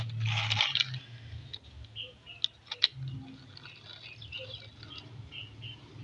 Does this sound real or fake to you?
real